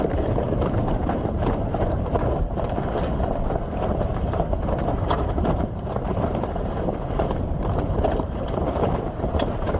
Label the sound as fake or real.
fake